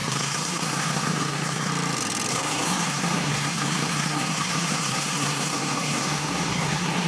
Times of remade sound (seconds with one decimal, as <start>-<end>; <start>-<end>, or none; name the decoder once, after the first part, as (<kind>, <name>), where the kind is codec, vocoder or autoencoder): 0.0-1.7 (codec, SNAC); 2.3-7.1